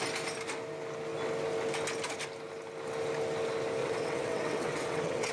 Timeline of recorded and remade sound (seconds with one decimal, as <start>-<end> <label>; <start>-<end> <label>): 0.0-3.8 recorded; 3.8-5.3 remade